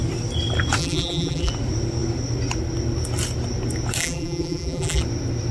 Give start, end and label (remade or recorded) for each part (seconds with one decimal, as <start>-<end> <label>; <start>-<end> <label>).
0.0-0.8 recorded; 0.8-1.5 remade; 1.5-4.0 recorded; 4.0-5.0 remade; 5.0-5.5 recorded